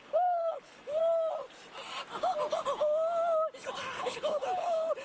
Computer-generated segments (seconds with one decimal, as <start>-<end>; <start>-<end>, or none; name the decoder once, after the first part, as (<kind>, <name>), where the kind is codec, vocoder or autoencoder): 0.0-1.0 (codec, HILCodec); 4.0-5.0